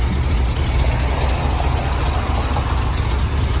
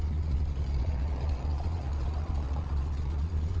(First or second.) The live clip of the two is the first